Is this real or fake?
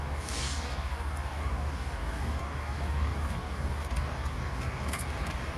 fake